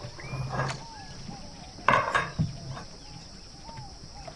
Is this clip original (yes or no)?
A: yes